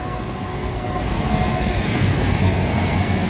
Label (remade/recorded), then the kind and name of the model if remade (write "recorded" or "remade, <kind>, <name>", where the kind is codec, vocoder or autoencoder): remade, codec, SNAC